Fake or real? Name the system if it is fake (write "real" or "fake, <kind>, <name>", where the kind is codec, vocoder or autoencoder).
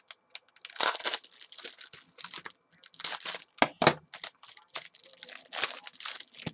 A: real